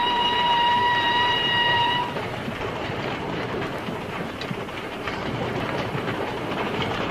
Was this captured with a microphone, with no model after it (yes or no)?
no